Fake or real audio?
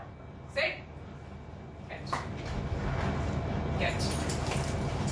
real